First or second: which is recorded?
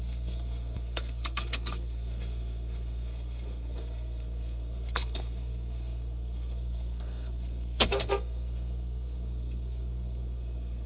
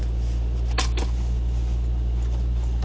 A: second